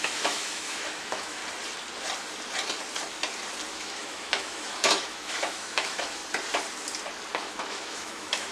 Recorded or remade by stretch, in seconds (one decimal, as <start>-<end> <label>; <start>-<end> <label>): 0.0-1.4 remade; 1.4-3.7 recorded; 3.7-6.2 remade; 6.2-7.4 recorded; 7.4-8.5 remade